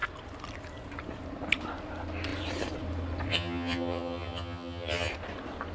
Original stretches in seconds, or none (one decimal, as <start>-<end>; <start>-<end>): 0.0-3.3; 5.1-5.7